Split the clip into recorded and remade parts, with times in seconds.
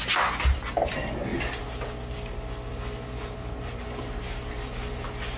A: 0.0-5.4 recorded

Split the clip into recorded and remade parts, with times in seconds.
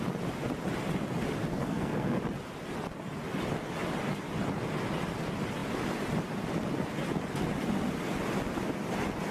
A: 0.0-1.5 recorded; 1.5-2.2 remade; 2.2-9.3 recorded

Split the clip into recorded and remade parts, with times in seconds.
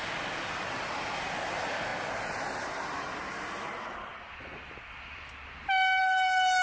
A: 0.0-6.6 recorded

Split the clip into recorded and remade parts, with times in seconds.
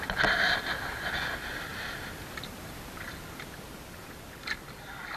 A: 0.0-5.2 recorded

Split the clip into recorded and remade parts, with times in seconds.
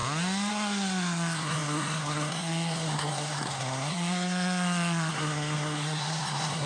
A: 0.0-0.5 recorded; 0.5-6.7 remade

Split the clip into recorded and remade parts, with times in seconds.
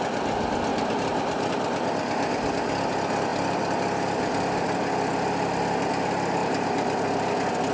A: 0.0-0.7 recorded; 0.7-1.5 remade; 1.5-6.4 recorded; 6.4-7.0 remade; 7.0-7.7 recorded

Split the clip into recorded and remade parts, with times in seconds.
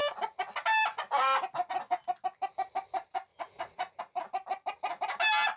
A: 0.0-3.3 recorded; 3.3-4.0 remade; 4.0-5.6 recorded